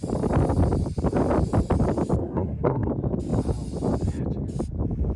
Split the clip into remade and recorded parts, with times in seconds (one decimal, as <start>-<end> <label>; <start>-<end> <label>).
0.0-2.2 recorded; 2.2-2.9 remade; 2.9-5.2 recorded